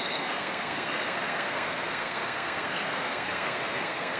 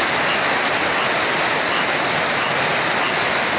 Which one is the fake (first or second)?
first